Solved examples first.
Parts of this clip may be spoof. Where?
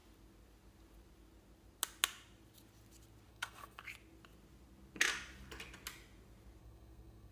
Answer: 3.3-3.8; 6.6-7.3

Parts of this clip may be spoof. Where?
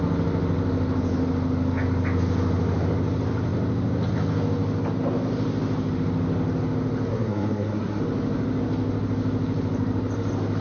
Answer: 7.1-8.0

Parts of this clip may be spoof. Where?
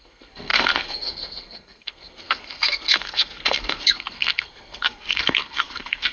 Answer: 0.0-6.1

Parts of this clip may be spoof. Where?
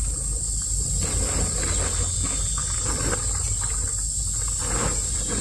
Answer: none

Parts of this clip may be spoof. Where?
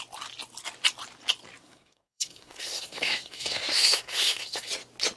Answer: 1.6-4.7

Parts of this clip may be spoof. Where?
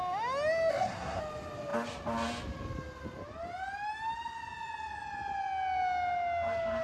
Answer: 0.7-1.2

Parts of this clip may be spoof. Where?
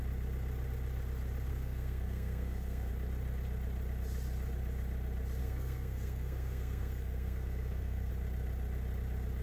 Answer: 1.5-2.9; 5.4-8.1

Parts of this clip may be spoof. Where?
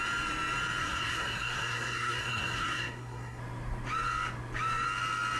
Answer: 0.8-3.4